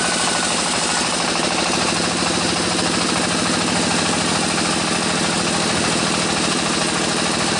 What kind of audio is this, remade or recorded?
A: recorded